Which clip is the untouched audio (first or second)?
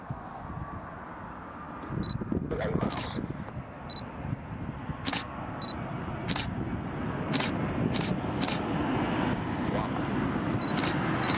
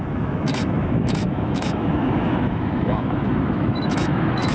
first